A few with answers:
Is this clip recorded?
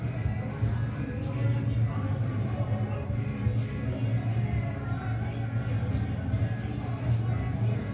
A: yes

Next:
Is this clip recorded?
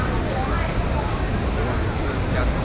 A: yes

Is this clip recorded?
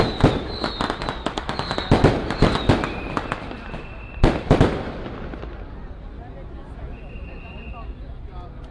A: yes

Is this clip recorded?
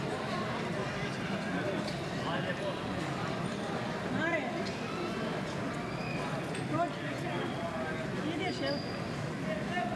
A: yes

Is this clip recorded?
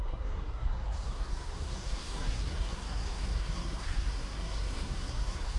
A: no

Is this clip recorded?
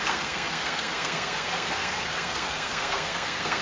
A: no